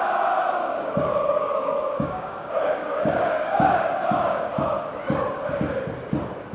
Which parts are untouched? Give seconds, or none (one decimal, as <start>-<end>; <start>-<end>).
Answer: 0.0-0.6; 4.5-6.5